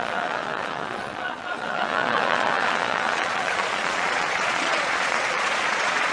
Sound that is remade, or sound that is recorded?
remade